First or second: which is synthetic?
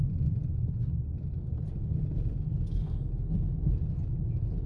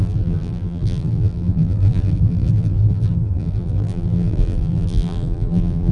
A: second